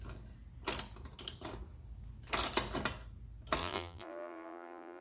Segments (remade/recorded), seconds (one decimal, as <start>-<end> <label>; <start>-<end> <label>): 0.0-3.6 recorded; 3.6-5.0 remade